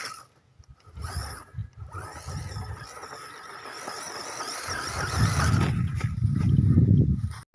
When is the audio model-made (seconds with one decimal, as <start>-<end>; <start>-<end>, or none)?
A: none